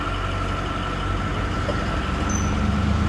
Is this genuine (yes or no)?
yes